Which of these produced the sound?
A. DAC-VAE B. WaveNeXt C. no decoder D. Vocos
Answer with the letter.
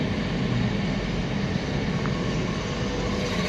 C